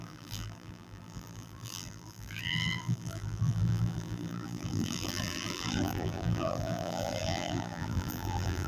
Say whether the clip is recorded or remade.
remade